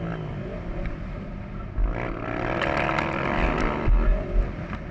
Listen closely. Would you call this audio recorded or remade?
recorded